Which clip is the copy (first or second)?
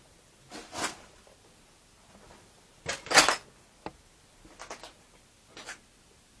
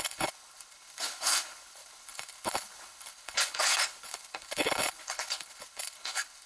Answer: second